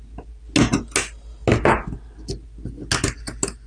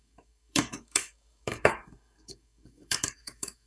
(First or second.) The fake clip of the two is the second